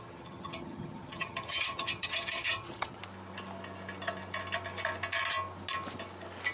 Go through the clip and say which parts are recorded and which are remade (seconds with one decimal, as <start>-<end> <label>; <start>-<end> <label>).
0.0-3.0 remade; 3.0-6.5 recorded